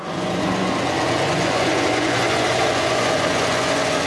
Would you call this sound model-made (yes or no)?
yes